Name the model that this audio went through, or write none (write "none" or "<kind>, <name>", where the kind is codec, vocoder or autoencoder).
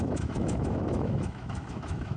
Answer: autoencoder, DAC-VAE